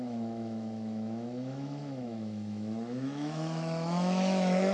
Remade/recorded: remade